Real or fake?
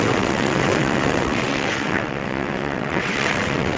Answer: fake